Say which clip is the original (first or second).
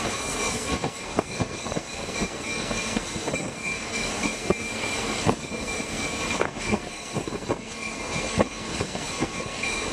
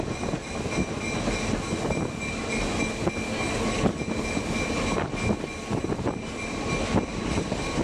second